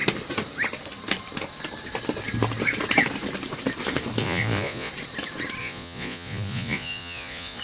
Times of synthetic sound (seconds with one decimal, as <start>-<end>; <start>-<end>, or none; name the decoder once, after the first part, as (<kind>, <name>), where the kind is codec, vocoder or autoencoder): 4.2-4.9 (vocoder, Vocos); 5.6-7.6